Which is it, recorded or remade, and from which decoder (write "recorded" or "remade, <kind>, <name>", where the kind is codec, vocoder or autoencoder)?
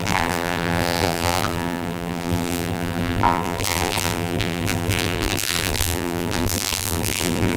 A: remade, vocoder, BigVGAN v2